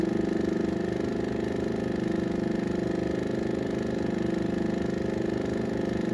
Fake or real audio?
real